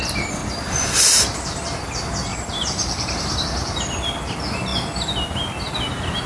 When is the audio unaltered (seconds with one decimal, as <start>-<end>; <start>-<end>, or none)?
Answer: 0.0-0.4; 1.9-2.3; 3.4-6.3